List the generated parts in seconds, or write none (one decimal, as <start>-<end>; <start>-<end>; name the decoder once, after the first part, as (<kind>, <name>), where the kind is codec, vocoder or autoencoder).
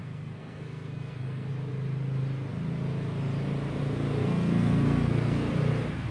0.0-1.5 (codec, SNAC); 4.2-5.5